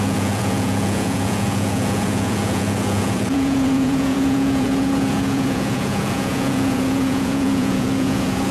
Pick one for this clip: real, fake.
fake